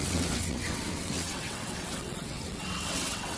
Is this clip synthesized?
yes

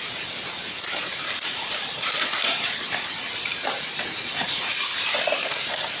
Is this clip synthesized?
yes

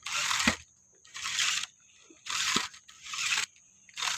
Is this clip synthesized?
yes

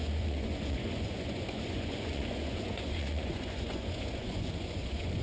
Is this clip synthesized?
yes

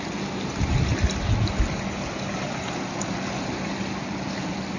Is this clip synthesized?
no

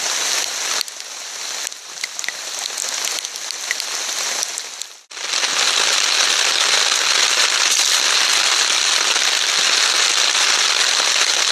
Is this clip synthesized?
no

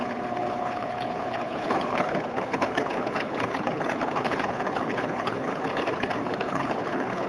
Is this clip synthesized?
yes